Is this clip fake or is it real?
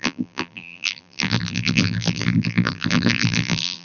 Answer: fake